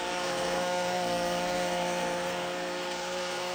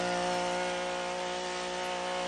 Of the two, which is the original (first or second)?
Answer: second